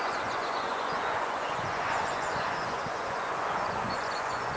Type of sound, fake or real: fake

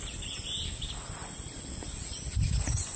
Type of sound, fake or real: real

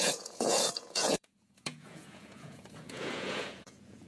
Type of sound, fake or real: fake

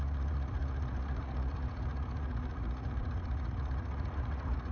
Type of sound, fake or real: fake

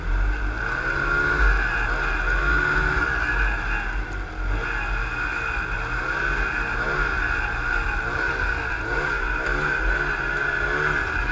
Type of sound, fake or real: real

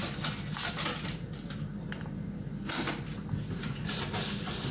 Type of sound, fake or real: real